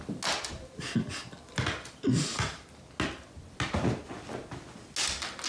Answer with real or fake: real